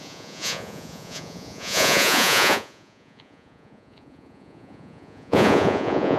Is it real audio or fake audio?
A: fake